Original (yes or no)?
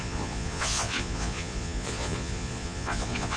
no